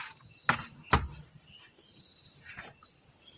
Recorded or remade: recorded